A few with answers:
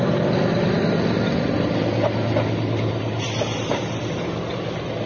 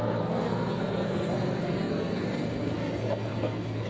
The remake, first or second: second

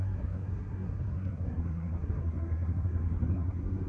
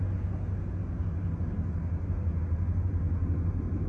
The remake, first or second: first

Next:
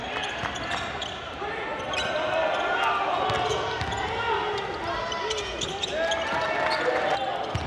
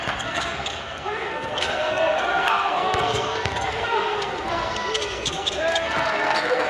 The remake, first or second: second